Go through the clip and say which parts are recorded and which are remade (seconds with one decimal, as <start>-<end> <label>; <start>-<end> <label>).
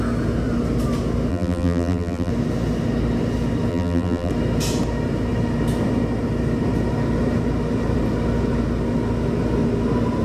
0.0-1.3 recorded; 1.3-2.3 remade; 2.3-3.7 recorded; 3.7-4.3 remade; 4.3-10.2 recorded